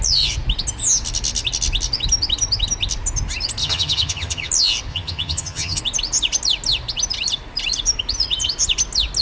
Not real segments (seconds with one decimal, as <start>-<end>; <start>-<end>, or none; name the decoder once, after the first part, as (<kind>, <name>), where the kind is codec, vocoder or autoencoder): 3.6-4.5 (vocoder, HiFi-GAN); 4.9-5.8